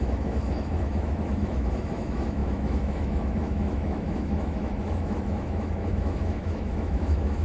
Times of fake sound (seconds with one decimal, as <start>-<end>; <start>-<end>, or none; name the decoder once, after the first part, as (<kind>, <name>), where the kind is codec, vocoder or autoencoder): 0.0-7.4 (autoencoder, DAC-VAE)

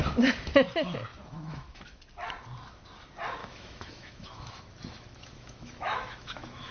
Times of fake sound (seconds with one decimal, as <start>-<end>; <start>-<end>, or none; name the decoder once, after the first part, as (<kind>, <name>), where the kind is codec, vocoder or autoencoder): 1.1-2.0 (autoencoder, DAC-VAE); 3.4-6.7

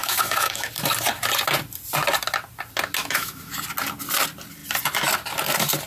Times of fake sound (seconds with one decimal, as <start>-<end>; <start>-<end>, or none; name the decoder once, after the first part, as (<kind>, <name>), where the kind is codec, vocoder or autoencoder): 0.0-0.7 (autoencoder, DAC-VAE); 3.0-3.5

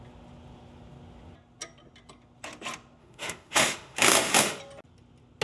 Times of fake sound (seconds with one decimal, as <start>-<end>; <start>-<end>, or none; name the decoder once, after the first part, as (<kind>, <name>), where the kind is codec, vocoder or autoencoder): 3.0-4.6 (autoencoder, DAC-VAE)

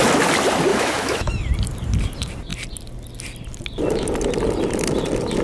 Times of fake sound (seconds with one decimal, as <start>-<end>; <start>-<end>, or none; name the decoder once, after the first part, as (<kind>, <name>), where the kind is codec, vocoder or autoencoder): 0.7-1.3 (autoencoder, DAC-VAE)